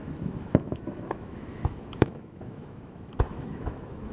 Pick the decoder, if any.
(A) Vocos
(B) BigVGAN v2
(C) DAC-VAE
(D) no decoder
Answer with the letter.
C